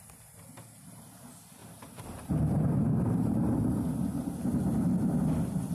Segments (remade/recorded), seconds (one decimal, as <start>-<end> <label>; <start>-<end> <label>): 0.0-1.6 recorded; 1.6-3.7 remade; 3.7-5.7 recorded